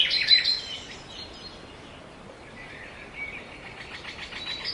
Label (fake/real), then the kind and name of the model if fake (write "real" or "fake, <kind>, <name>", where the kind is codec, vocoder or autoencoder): real